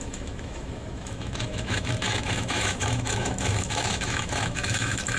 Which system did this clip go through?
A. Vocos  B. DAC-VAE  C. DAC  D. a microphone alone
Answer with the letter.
B